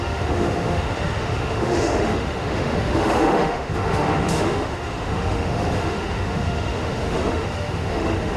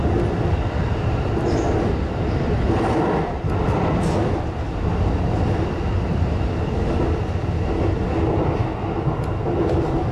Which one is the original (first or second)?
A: second